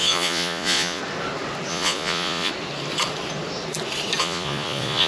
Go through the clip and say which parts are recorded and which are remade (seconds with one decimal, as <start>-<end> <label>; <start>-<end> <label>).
0.0-1.0 remade; 1.0-1.7 recorded; 1.7-2.5 remade; 2.5-4.2 recorded; 4.2-5.1 remade

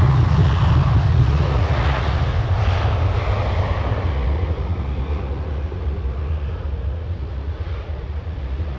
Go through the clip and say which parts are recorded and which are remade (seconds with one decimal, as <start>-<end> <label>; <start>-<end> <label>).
0.0-0.6 remade; 0.6-1.1 recorded; 1.1-2.3 remade; 2.3-4.0 recorded; 4.0-8.8 remade

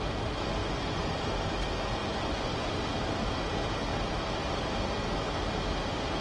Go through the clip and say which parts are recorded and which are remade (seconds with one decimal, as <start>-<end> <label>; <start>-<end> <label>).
0.0-0.6 recorded; 0.6-1.2 remade; 1.2-2.0 recorded; 2.0-2.7 remade; 2.7-6.2 recorded

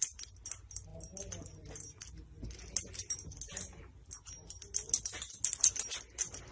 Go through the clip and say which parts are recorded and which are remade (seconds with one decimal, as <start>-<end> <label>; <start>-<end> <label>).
0.0-6.5 recorded

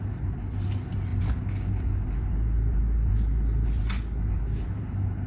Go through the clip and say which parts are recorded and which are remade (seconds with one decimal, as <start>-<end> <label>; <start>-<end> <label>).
0.0-5.3 recorded

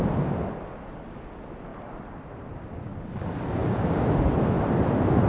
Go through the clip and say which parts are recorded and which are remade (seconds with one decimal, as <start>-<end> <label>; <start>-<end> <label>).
0.0-5.3 recorded

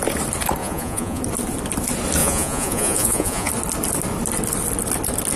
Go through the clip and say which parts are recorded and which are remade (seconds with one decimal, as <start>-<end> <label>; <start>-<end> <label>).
0.0-0.6 recorded; 0.6-1.2 remade; 1.2-2.2 recorded; 2.2-3.5 remade; 3.5-5.4 recorded

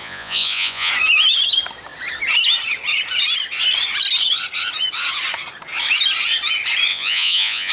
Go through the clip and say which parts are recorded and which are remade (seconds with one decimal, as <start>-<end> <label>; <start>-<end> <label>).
0.0-0.9 remade; 0.9-6.9 recorded; 6.9-7.7 remade